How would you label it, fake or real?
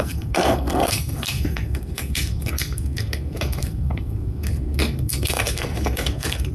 fake